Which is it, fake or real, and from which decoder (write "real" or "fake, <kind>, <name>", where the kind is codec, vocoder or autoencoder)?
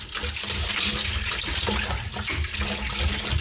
real